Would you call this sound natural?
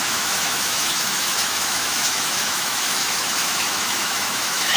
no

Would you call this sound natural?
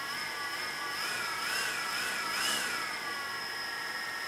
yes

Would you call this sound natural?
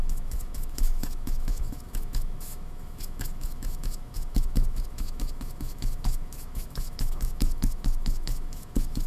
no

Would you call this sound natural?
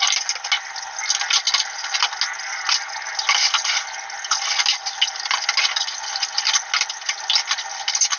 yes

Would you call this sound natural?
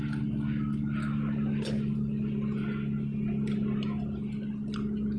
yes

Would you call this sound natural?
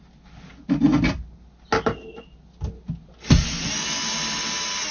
yes